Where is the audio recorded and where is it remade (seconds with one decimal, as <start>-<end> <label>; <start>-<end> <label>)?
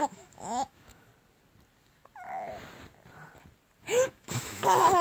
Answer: 0.0-1.1 remade; 1.1-3.8 recorded; 3.8-5.0 remade